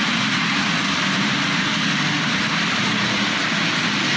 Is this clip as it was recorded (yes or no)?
yes